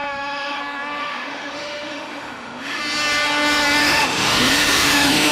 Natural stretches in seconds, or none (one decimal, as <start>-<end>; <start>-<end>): 0.6-1.0; 2.8-3.8